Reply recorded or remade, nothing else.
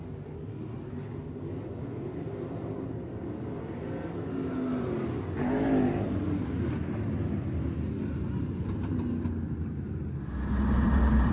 recorded